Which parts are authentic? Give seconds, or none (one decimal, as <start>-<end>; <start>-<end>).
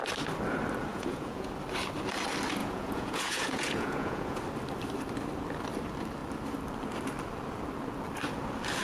0.0-0.9; 1.5-2.6; 4.4-8.8